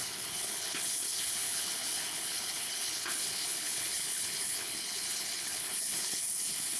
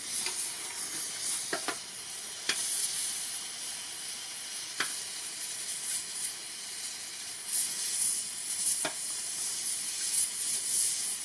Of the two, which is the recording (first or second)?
second